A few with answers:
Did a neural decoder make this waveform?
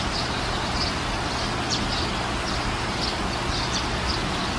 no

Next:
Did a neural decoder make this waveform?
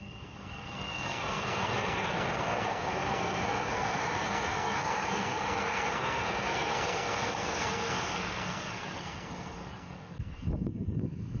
yes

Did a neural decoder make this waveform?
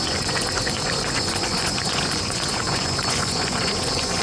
yes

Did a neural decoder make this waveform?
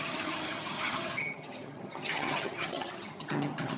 yes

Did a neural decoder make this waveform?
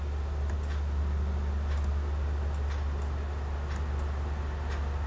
no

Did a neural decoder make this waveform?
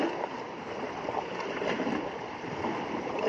no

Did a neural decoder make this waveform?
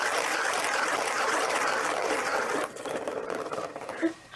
yes